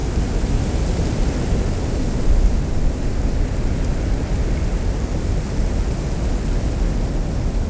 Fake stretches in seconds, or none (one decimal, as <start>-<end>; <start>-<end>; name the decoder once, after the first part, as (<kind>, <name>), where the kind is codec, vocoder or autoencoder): none